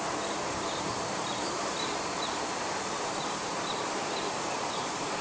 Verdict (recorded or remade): remade